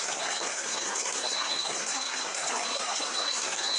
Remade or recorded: remade